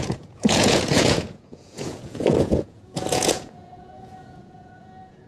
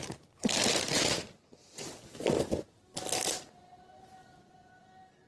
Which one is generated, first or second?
first